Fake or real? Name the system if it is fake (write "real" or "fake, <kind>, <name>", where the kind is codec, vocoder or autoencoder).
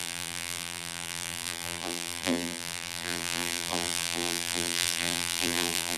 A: fake, vocoder, BigVGAN v2